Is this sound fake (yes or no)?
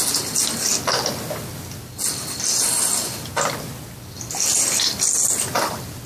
no